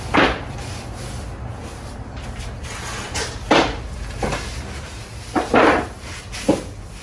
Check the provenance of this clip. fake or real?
real